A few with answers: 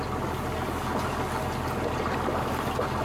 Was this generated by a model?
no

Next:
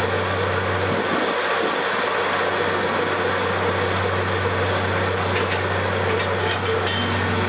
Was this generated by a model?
no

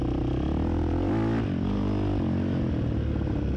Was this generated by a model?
no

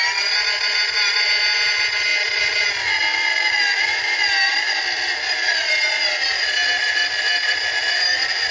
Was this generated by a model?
no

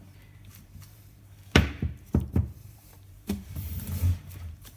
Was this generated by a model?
yes